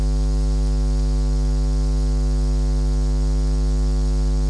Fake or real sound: real